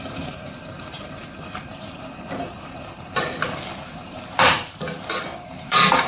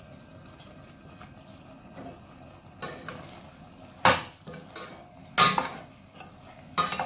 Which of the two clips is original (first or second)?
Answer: second